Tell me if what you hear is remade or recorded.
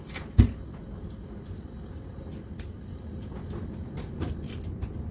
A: recorded